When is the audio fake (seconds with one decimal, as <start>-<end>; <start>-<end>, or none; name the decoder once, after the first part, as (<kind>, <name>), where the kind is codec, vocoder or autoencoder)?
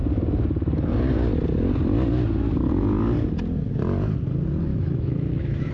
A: 4.7-5.7 (autoencoder, DAC-VAE)